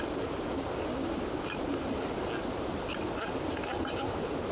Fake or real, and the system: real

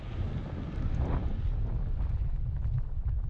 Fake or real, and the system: real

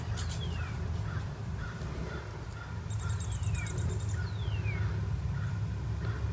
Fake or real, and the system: real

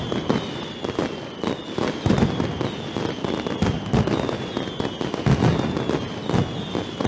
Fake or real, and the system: real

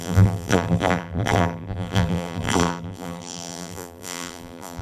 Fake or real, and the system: fake, vocoder, BigVGAN v2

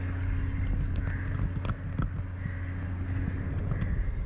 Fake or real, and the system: real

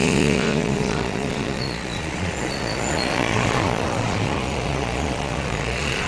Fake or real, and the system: fake, vocoder, Vocos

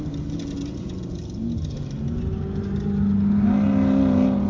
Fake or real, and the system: real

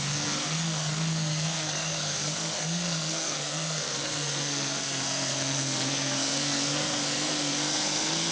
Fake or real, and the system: fake, codec, SNAC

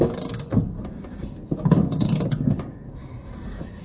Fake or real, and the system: real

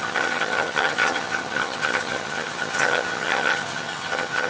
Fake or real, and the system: fake, vocoder, HiFi-GAN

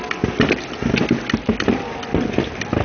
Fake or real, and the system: real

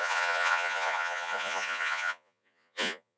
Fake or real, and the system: fake, vocoder, Vocos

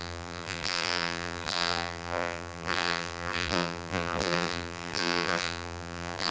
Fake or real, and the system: fake, vocoder, BigVGAN v2